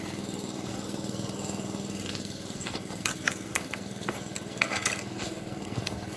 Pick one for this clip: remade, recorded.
remade